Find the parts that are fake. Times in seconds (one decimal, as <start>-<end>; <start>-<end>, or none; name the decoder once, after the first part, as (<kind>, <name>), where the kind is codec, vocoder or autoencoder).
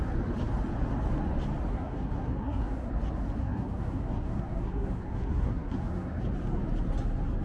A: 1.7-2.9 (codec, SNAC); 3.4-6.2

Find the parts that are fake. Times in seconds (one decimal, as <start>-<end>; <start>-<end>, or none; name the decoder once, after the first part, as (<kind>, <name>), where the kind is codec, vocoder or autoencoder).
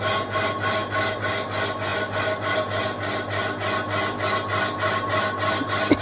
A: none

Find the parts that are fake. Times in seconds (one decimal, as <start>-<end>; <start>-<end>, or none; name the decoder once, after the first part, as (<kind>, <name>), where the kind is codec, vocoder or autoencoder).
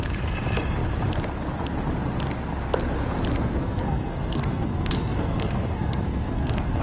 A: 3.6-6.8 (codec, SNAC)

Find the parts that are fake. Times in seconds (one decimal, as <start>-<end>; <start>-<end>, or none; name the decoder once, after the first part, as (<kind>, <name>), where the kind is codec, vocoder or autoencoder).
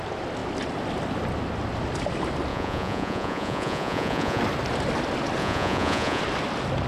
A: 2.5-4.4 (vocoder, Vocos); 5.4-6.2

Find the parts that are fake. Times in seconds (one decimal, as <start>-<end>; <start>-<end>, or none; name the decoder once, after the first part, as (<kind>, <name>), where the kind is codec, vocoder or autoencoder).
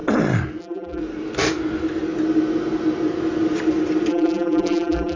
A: 0.6-1.0 (vocoder, BigVGAN v2); 4.1-5.2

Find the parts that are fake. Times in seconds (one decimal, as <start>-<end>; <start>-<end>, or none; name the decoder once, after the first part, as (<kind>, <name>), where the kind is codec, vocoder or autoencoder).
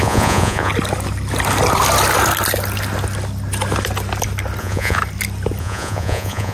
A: 0.0-0.7 (vocoder, Vocos); 4.6-5.0; 5.6-6.5